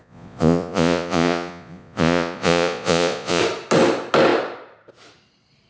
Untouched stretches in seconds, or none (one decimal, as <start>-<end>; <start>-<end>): 3.4-5.7